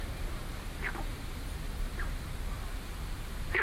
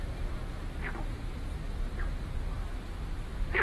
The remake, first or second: first